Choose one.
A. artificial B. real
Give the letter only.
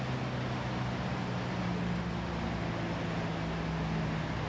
B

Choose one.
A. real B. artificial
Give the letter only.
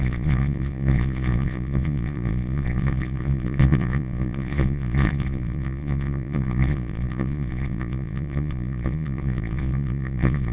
B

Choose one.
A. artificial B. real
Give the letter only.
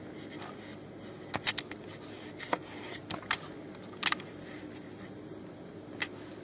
B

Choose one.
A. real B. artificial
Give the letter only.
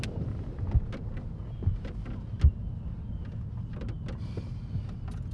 A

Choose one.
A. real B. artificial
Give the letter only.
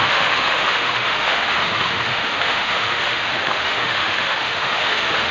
B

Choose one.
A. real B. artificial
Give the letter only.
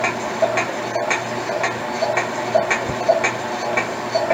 A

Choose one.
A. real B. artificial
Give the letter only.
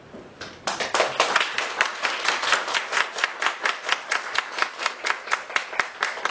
A